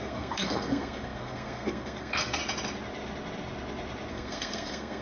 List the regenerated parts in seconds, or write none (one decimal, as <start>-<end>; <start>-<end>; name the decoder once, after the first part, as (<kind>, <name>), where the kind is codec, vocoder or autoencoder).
0.0-2.4 (codec, SNAC); 4.1-5.0